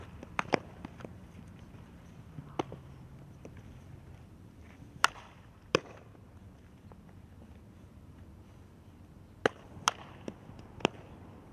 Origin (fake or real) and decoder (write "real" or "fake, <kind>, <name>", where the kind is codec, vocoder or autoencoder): fake, vocoder, BigVGAN v2